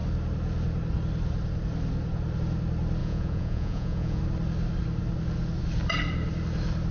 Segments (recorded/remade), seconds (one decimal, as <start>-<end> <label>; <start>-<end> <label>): 0.0-3.0 recorded; 3.0-4.2 remade; 4.2-6.9 recorded